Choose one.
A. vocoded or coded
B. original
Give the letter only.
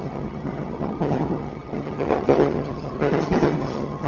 A